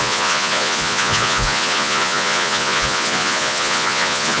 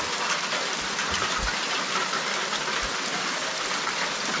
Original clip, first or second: second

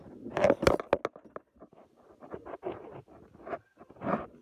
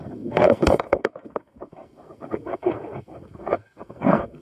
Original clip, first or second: first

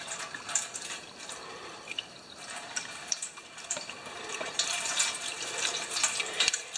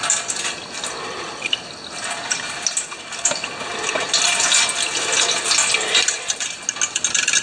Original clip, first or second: second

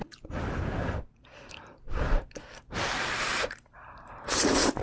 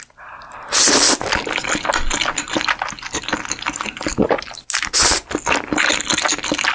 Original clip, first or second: second